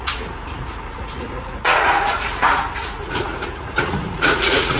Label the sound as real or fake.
fake